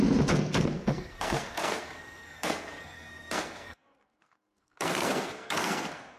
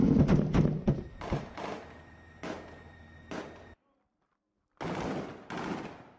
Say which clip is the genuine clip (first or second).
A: second